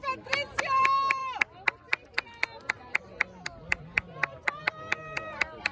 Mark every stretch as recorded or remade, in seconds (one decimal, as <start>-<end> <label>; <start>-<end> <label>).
0.0-5.7 recorded